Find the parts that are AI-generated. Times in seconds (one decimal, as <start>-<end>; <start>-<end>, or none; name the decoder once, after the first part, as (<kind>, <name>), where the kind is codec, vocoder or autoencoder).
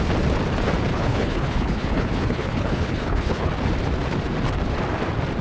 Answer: 0.9-3.5 (codec, HILCodec)